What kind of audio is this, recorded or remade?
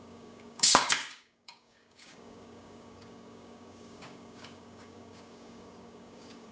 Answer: remade